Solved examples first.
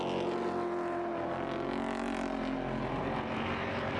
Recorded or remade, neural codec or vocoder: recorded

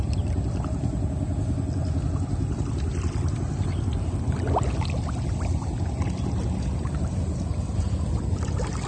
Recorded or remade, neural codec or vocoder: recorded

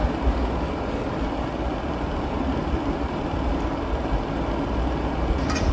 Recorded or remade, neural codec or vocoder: recorded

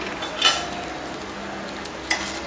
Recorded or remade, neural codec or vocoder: recorded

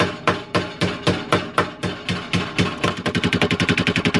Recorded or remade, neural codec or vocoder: recorded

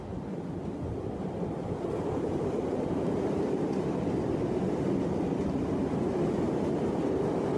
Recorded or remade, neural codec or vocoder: recorded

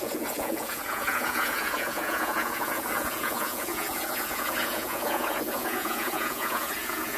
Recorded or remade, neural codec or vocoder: remade, vocoder, Vocos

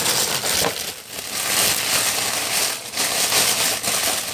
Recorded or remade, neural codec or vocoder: recorded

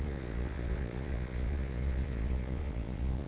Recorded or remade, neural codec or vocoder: remade, vocoder, Vocos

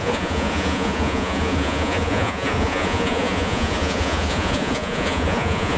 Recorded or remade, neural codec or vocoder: remade, vocoder, Vocos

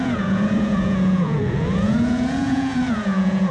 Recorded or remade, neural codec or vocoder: remade, vocoder, Vocos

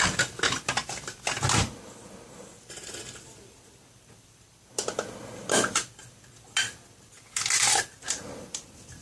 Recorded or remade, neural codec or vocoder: recorded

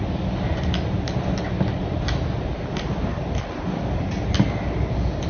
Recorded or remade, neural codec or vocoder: recorded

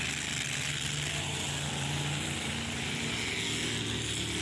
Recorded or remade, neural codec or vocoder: recorded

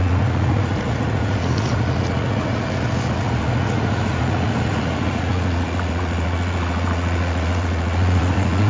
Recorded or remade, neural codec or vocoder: remade, vocoder, Vocos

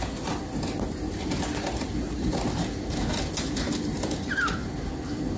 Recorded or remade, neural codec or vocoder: recorded